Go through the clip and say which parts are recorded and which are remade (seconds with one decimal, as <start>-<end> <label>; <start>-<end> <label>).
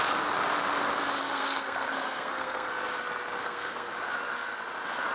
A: 0.0-1.2 recorded; 1.2-2.7 remade; 2.7-3.4 recorded; 3.4-3.9 remade; 3.9-5.1 recorded